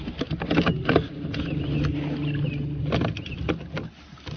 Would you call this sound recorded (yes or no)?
yes